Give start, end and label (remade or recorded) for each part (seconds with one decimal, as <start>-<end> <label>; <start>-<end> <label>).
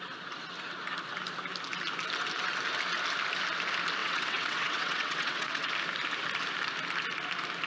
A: 0.0-4.0 recorded; 4.0-5.7 remade; 5.7-7.7 recorded